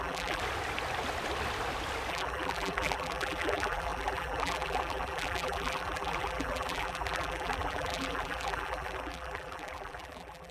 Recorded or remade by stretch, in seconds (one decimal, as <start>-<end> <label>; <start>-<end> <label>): 0.0-0.4 remade; 0.4-2.1 recorded; 2.1-10.5 remade